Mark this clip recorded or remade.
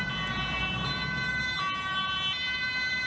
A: recorded